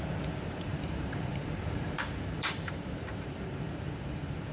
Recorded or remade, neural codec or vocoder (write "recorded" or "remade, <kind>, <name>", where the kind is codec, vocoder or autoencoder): remade, vocoder, BigVGAN v2